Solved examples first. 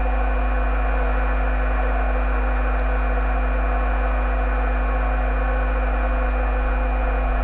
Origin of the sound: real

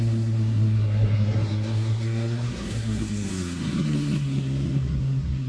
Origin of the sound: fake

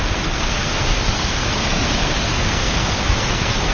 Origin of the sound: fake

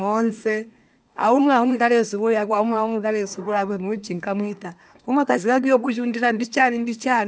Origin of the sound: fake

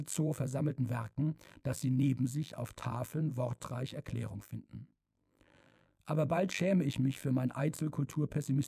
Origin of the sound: fake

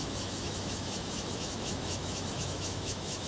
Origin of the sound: fake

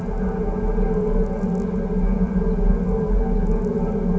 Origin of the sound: real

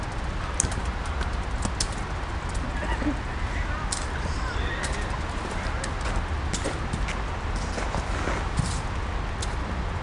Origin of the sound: real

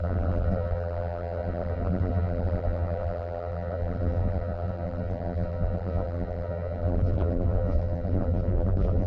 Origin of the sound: fake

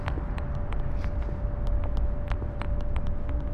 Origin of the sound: real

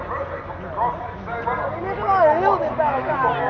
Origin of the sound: real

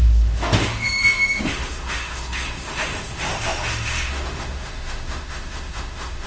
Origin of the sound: fake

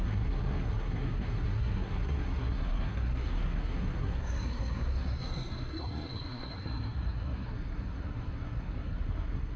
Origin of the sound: fake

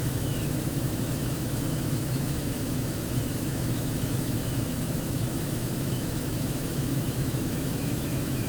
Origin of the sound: fake